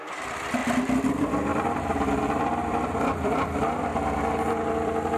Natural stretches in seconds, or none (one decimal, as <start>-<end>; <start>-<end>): 1.5-2.1; 3.9-4.5